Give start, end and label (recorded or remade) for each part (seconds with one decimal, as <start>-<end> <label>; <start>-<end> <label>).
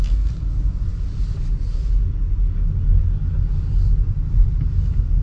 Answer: 0.0-5.2 recorded